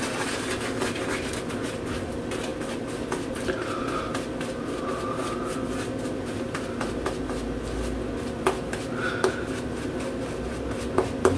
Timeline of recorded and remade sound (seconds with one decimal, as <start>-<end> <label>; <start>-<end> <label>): 0.0-11.4 recorded